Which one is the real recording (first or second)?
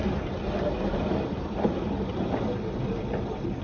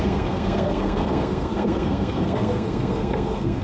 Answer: first